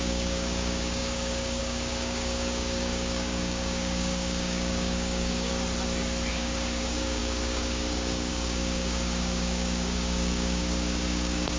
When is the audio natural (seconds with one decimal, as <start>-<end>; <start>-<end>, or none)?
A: 5.5-6.3